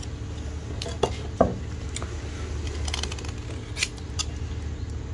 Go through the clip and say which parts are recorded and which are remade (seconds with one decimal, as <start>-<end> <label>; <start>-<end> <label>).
0.0-5.1 recorded